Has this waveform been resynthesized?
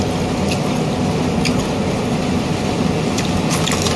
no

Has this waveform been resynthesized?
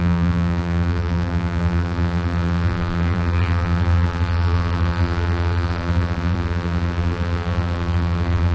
yes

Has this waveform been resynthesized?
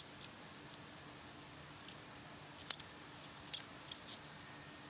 no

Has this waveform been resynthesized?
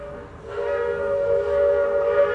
yes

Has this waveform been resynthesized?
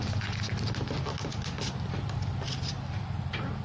no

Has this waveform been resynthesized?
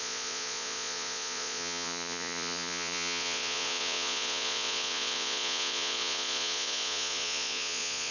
yes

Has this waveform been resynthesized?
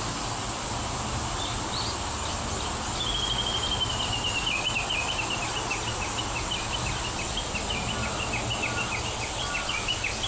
no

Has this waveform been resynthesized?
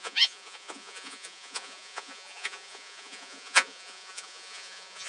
yes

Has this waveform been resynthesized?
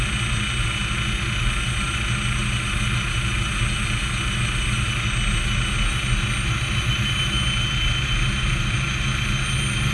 no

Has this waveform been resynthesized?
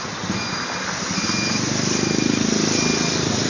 no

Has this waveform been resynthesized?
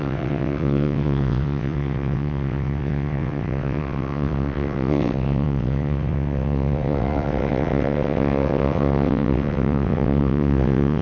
yes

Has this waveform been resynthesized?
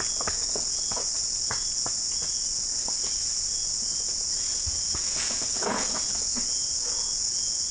yes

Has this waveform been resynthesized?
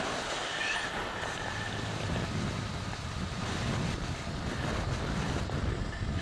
no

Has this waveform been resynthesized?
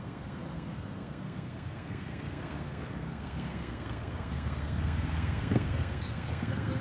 yes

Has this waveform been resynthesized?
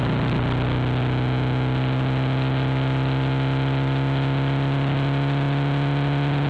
no